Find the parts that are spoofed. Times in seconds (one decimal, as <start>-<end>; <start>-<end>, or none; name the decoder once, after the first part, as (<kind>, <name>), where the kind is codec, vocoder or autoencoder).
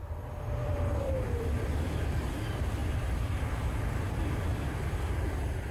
none